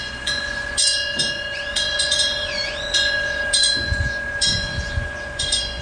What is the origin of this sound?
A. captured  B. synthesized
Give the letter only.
B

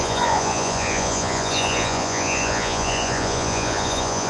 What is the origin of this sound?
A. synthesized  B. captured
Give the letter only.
A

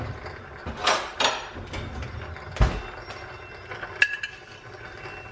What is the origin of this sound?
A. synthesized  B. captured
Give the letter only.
B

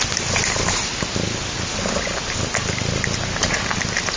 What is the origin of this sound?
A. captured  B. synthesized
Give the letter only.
A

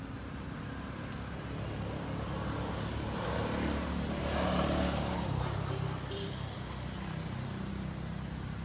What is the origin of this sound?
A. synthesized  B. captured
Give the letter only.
B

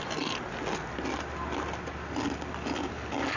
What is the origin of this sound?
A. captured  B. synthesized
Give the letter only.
A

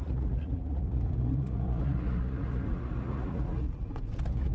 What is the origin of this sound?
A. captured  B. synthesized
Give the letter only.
B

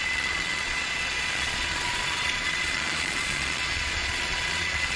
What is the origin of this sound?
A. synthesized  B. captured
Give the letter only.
A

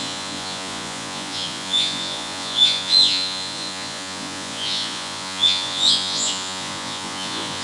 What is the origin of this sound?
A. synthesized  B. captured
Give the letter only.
A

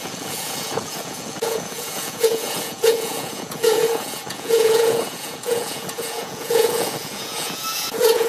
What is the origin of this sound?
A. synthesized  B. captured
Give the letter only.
A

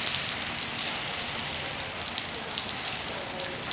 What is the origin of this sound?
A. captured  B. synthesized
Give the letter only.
A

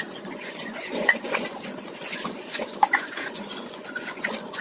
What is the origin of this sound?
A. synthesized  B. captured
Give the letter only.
A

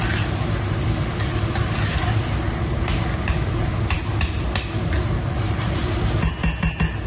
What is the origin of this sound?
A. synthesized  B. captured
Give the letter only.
B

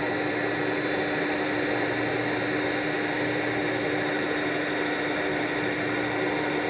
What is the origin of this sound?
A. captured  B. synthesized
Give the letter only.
A